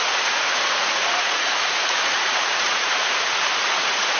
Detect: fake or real fake